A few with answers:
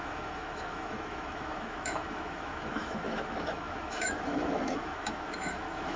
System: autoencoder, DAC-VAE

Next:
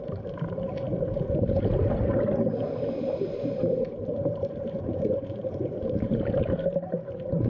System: vocoder, BigVGAN v2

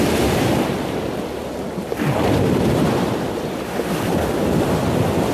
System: none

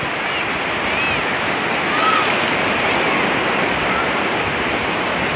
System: none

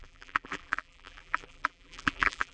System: vocoder, BigVGAN v2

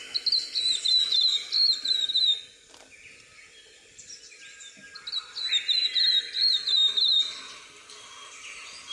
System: none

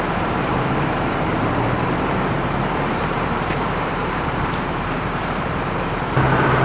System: vocoder, BigVGAN v2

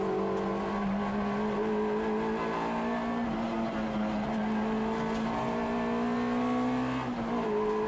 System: none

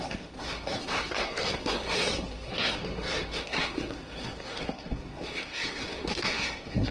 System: codec, SNAC